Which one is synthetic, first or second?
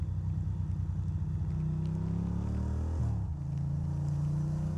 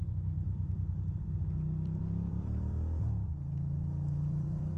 second